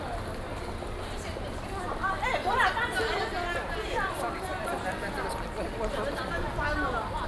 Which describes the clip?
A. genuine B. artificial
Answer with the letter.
A